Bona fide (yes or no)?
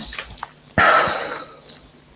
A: yes